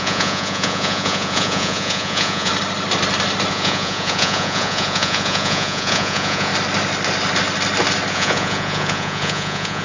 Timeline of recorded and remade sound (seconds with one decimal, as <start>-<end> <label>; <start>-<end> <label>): 0.0-2.5 remade; 2.5-3.5 recorded; 3.5-6.5 remade; 6.5-8.1 recorded; 8.1-9.8 remade